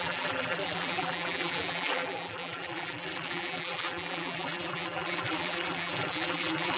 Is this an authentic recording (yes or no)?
no